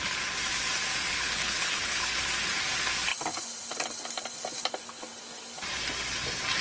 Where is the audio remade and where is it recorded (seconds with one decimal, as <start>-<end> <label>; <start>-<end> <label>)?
0.0-1.1 recorded; 1.1-2.2 remade; 2.2-6.6 recorded